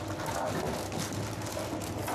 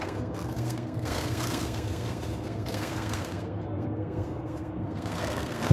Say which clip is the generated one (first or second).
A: second